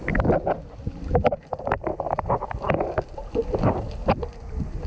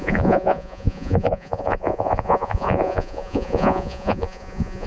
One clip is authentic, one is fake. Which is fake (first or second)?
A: second